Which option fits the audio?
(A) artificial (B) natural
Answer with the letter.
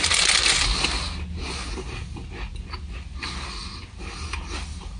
B